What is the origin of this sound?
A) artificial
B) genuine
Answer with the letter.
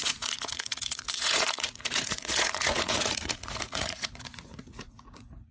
A